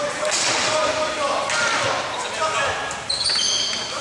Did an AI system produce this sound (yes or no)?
no